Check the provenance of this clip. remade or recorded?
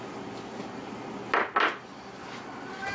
recorded